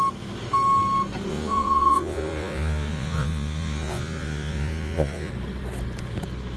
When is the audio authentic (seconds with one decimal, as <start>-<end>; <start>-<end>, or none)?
0.0-1.3; 5.3-6.6